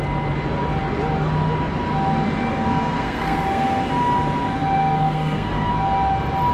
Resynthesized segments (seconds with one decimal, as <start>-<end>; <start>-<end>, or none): 2.5-3.9; 4.8-5.7